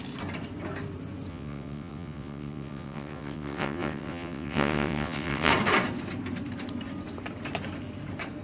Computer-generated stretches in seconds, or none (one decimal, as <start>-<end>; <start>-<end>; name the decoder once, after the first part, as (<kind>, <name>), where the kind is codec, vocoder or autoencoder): 1.3-5.5 (vocoder, WaveNeXt)